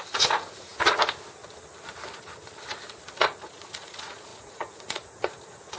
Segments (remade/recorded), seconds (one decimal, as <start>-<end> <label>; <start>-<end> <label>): 0.0-0.7 remade; 0.7-3.2 recorded; 3.2-5.8 remade